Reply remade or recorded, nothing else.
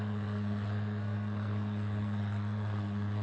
remade